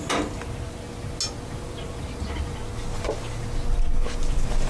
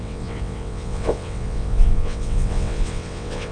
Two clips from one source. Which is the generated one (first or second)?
second